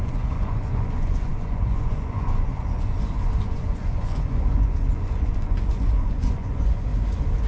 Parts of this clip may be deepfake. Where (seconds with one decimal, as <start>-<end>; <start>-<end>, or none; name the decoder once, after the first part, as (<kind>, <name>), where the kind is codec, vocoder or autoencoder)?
0.0-6.9 (vocoder, Vocos)